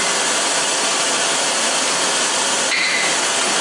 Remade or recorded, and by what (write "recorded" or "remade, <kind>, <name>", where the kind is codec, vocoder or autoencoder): recorded